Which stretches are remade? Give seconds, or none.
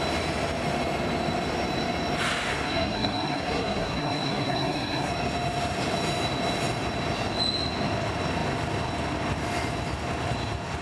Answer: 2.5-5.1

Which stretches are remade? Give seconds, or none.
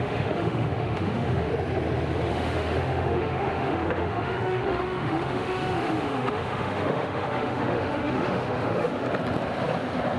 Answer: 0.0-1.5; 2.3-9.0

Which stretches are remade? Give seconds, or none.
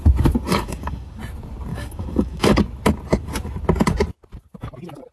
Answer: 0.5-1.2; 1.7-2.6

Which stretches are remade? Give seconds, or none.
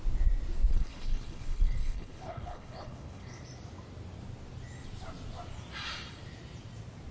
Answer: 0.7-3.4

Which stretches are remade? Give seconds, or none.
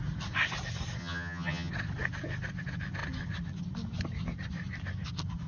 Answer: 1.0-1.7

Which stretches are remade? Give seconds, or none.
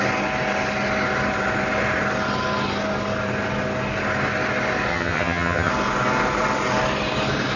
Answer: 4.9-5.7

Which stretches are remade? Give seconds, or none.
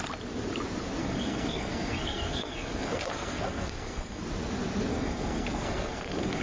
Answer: 1.0-4.2; 4.9-6.4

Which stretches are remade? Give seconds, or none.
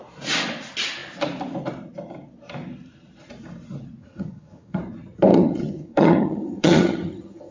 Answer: 4.0-4.8; 5.3-7.5